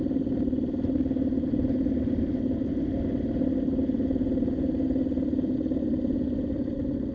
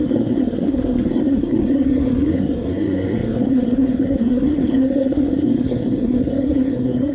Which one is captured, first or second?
first